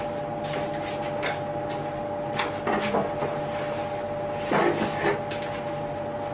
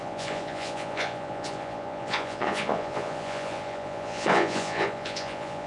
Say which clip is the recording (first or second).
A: first